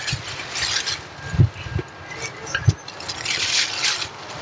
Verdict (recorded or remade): recorded